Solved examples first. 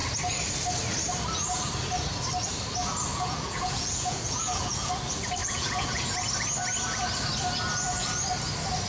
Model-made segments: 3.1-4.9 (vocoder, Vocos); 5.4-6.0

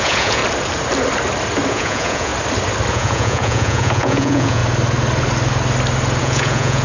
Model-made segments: 0.0-0.4 (vocoder, Vocos); 1.7-2.3; 2.9-4.6; 6.2-6.8

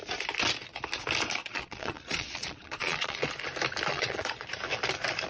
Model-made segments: 1.4-3.3 (vocoder, Vocos); 3.9-4.5

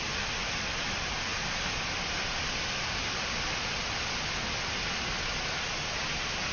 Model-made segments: none

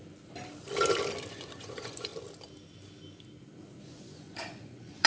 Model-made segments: 1.3-2.1 (vocoder, Vocos); 3.8-5.1

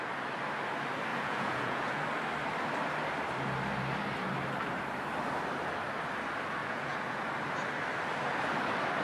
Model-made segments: 1.1-2.0 (vocoder, Vocos); 6.6-7.2